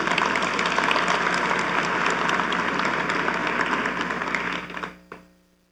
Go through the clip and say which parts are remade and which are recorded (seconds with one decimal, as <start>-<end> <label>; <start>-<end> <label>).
0.0-5.7 recorded